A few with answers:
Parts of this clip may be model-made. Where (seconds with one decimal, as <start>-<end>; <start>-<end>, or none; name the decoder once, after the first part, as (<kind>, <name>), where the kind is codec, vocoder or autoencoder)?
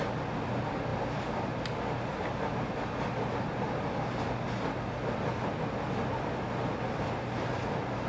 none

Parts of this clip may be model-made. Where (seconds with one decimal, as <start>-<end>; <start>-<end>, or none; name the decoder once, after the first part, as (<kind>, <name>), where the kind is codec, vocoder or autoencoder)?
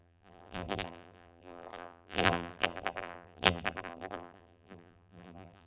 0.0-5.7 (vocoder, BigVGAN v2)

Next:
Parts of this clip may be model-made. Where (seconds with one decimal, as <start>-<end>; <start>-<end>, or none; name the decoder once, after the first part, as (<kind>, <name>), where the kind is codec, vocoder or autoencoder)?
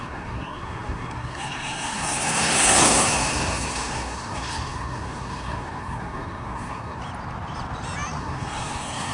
0.0-7.0 (codec, SNAC); 8.2-9.1